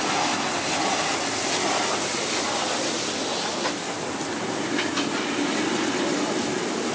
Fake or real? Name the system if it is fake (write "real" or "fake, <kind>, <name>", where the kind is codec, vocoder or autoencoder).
real